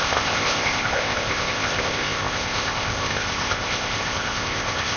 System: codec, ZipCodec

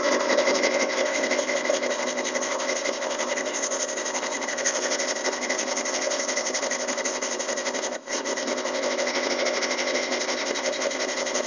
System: codec, ZipCodec